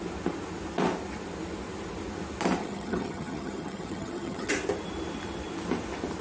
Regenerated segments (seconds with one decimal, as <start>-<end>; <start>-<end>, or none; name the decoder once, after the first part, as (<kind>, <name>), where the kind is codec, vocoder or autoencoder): 2.6-4.5 (vocoder, HiFi-GAN)